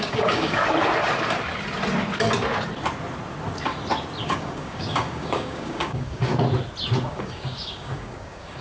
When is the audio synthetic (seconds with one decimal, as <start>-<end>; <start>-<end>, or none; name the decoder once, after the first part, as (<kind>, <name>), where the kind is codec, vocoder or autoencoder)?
0.0-0.6 (codec, DAC); 4.2-6.3; 7.1-8.6